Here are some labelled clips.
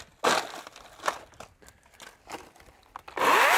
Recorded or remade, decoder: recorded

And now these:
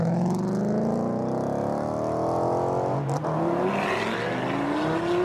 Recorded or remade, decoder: recorded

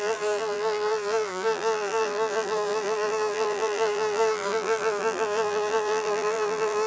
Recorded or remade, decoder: remade, vocoder, BigVGAN v2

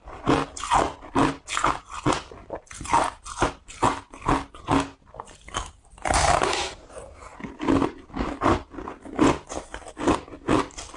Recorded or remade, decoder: recorded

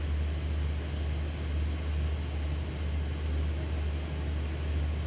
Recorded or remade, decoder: recorded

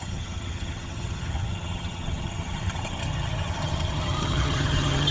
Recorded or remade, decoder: remade, vocoder, HiFi-GAN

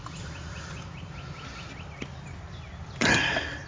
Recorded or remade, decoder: recorded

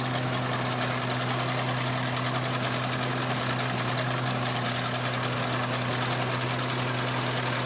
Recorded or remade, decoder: recorded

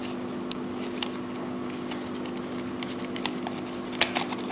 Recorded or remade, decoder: recorded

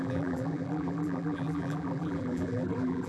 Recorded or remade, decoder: remade, vocoder, BigVGAN v2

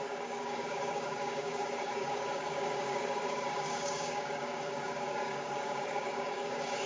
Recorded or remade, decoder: remade, codec, DAC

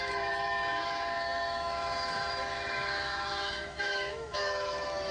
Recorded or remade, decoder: remade, autoencoder, DAC-VAE